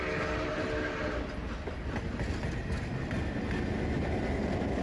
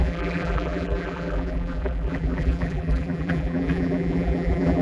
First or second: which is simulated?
second